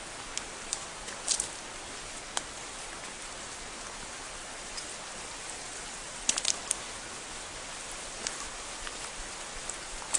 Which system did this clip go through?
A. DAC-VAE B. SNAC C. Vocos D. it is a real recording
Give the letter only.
D